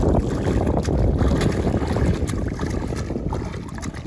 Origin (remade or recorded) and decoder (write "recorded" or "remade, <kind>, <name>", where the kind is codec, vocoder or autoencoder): recorded